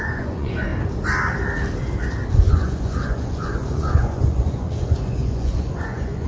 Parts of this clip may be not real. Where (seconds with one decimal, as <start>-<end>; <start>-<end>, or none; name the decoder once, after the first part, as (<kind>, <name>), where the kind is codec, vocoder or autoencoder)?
0.0-0.7 (vocoder, Vocos); 2.3-6.3